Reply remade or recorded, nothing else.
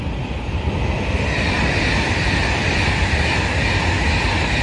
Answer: recorded